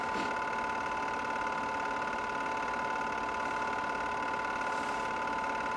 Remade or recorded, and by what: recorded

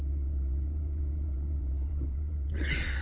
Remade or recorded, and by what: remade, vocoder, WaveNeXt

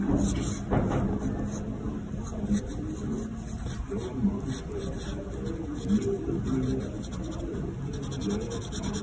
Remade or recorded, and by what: recorded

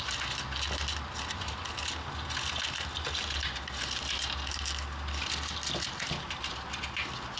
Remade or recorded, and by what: recorded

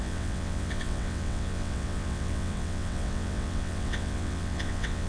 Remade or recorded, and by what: remade, vocoder, WaveNeXt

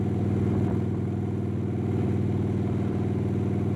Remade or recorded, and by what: recorded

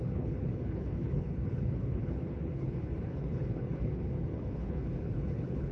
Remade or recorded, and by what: remade, codec, HILCodec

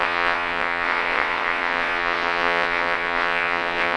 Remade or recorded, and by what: remade, vocoder, WaveNeXt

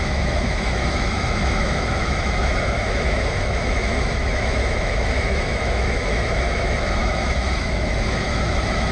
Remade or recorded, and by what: remade, autoencoder, DAC-VAE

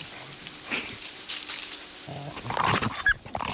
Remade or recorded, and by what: recorded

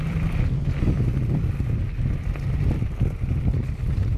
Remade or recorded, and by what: recorded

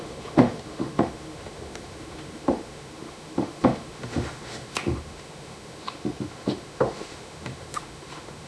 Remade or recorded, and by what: remade, autoencoder, DAC-VAE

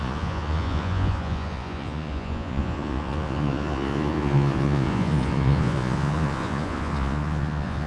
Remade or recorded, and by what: remade, vocoder, Vocos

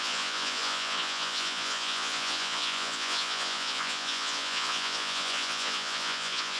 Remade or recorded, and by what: remade, vocoder, Vocos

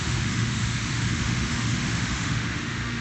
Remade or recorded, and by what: remade, autoencoder, DAC-VAE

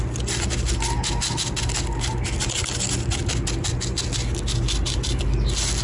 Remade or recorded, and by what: recorded